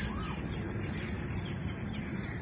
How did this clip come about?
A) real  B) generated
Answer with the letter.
A